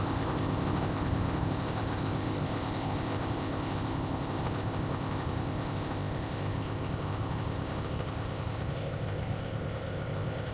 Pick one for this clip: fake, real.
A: fake